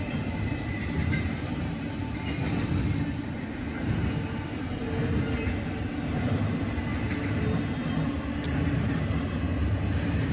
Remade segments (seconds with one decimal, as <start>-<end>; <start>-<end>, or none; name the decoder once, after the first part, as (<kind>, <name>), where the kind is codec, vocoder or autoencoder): none